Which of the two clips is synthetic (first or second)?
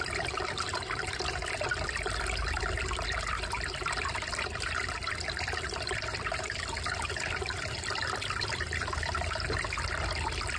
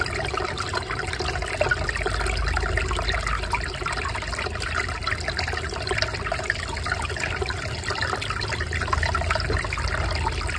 first